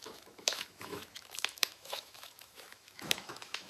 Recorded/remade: remade